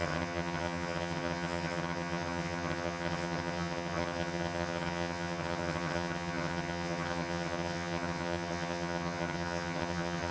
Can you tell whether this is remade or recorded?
remade